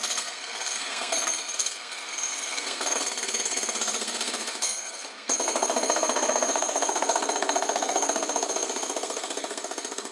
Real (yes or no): no